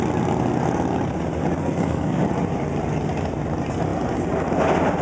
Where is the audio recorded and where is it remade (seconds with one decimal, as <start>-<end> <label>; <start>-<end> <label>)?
0.0-1.6 recorded; 1.6-2.2 remade; 2.2-5.0 recorded